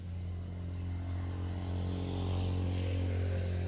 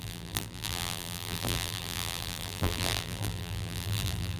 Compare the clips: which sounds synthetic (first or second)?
second